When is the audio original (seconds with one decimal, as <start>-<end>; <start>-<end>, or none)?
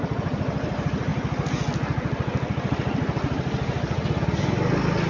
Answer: 0.0-5.1